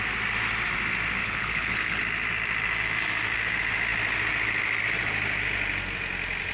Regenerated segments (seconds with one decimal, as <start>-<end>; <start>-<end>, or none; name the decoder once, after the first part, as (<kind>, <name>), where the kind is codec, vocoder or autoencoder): 1.2-2.0 (codec, HILCodec)